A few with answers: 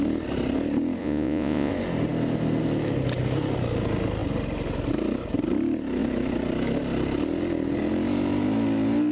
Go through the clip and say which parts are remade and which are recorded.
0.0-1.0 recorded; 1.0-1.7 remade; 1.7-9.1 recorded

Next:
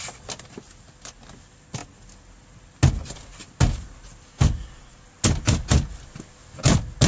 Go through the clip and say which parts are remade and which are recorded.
0.0-7.1 recorded

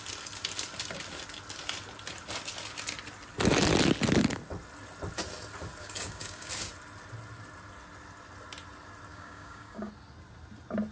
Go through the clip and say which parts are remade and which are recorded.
0.0-5.8 recorded; 5.8-6.5 remade; 6.5-9.1 recorded; 9.1-9.9 remade; 9.9-10.9 recorded

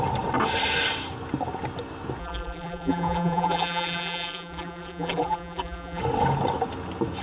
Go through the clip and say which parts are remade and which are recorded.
0.0-2.2 recorded; 2.2-6.0 remade; 6.0-7.2 recorded

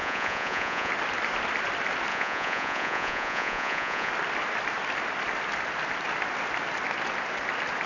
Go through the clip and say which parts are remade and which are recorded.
0.0-0.9 remade; 0.9-2.1 recorded; 2.1-4.1 remade; 4.1-7.9 recorded